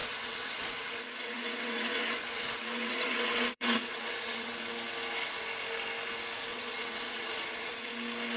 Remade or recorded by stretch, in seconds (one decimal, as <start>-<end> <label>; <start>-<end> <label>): 0.0-4.7 remade; 4.7-6.5 recorded; 6.5-7.9 remade; 7.9-8.4 recorded